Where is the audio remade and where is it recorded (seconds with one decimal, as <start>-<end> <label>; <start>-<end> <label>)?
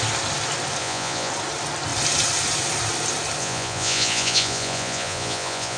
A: 0.0-0.8 recorded; 0.8-1.3 remade; 1.3-3.4 recorded; 3.4-5.8 remade